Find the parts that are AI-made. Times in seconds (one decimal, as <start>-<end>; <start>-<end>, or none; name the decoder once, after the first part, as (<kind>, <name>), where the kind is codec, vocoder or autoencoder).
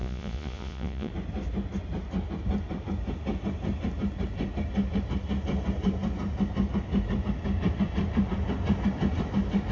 0.0-1.1 (vocoder, Vocos)